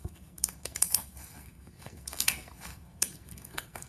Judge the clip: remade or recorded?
remade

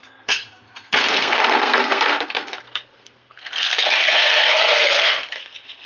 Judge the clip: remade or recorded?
remade